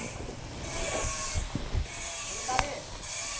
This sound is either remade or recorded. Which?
recorded